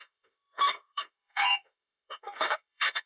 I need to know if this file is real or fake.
fake